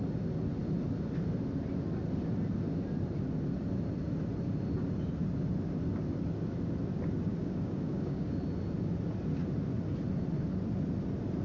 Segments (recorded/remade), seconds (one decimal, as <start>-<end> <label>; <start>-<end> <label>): 0.0-7.3 recorded; 7.3-8.4 remade; 8.4-11.4 recorded